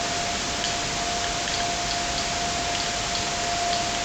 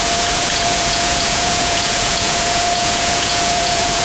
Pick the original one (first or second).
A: first